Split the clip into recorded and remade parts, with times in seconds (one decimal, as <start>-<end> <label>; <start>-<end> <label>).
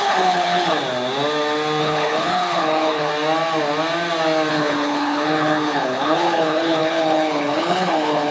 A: 0.0-0.8 remade; 0.8-1.8 recorded; 1.8-3.1 remade; 3.1-4.5 recorded; 4.5-8.3 remade